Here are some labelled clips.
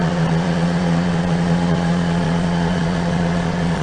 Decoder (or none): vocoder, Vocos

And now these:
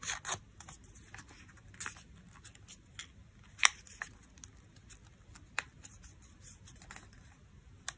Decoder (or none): none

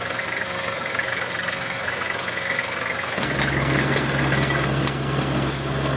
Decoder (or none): codec, SNAC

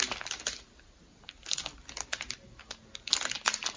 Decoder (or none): none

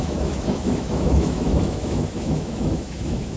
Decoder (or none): autoencoder, DAC-VAE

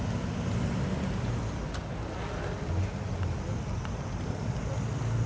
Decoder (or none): none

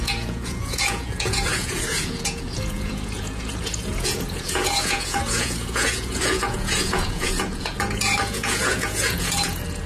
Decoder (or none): vocoder, Vocos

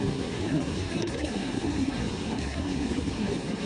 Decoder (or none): codec, SNAC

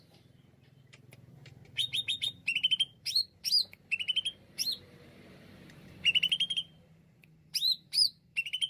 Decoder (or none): vocoder, BigVGAN v2